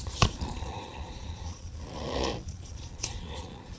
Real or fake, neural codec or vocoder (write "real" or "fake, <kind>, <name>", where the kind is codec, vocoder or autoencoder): fake, vocoder, Vocos